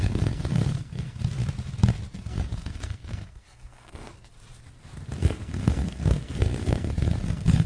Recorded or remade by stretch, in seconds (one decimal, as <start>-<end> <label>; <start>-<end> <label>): 0.0-1.2 remade; 1.2-2.1 recorded; 2.1-4.3 remade; 4.3-5.2 recorded; 5.2-7.7 remade